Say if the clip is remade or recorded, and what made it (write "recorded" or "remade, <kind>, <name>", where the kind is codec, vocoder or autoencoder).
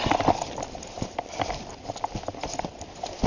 recorded